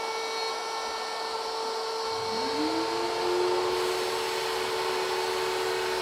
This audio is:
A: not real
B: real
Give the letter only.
B